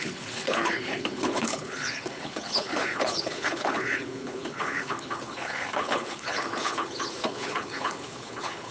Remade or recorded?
remade